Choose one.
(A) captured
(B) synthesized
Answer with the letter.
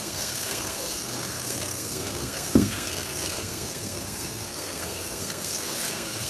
B